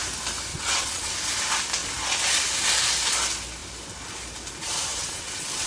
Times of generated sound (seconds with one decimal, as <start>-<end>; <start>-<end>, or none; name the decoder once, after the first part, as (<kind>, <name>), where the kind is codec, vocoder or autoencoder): 0.5-1.1 (vocoder, WaveNeXt); 4.9-5.7